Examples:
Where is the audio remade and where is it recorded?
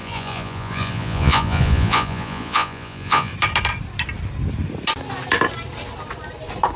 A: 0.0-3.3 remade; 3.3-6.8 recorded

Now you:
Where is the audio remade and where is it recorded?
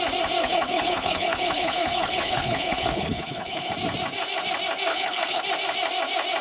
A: 0.0-0.4 recorded; 0.4-3.7 remade; 3.7-4.9 recorded; 4.9-5.4 remade; 5.4-6.4 recorded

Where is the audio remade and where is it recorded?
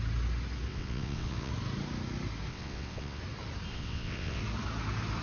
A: 0.0-0.7 recorded; 0.7-1.5 remade; 1.5-2.5 recorded; 2.5-3.2 remade; 3.2-3.7 recorded; 3.7-4.4 remade; 4.4-5.2 recorded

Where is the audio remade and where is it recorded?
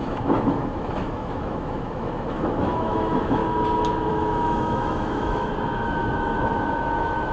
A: 0.0-3.4 remade; 3.4-4.1 recorded; 4.1-7.3 remade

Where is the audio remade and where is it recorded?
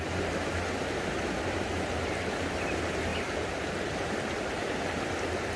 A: 0.0-3.1 recorded; 3.1-4.4 remade; 4.4-5.6 recorded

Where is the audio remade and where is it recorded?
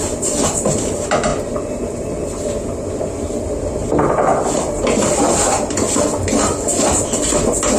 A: 0.0-1.3 recorded; 1.3-2.9 remade; 2.9-4.3 recorded; 4.3-5.1 remade; 5.1-7.8 recorded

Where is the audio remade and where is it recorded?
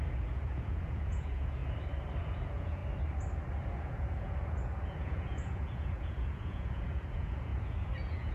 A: 0.0-1.6 remade; 1.6-2.2 recorded; 2.2-2.8 remade; 2.8-3.5 recorded; 3.5-8.3 remade